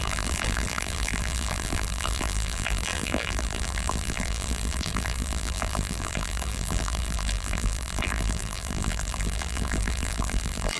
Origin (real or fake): fake